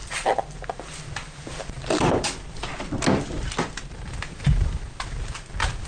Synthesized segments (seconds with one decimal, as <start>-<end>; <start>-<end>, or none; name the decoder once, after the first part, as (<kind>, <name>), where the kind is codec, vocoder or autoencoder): none